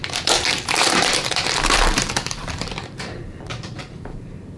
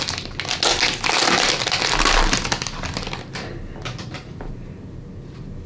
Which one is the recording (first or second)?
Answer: second